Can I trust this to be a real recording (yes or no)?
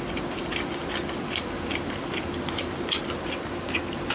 yes